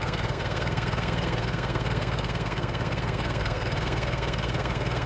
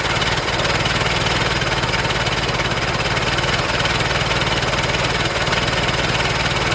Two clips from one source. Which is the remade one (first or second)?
first